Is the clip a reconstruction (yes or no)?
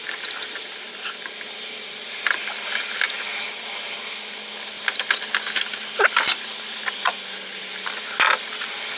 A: no